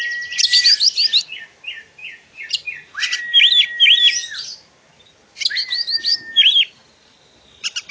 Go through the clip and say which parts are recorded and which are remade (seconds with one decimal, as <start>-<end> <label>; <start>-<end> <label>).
0.0-2.0 recorded; 2.0-2.6 remade; 2.6-7.9 recorded